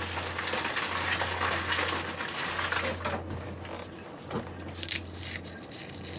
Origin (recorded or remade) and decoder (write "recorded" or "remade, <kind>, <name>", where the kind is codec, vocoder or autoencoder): recorded